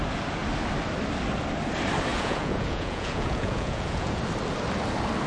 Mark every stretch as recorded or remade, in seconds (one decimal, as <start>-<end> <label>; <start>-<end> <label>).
0.0-2.1 recorded; 2.1-4.2 remade; 4.2-5.3 recorded